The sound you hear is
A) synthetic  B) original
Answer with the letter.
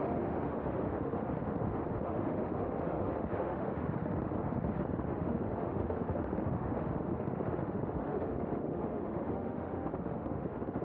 A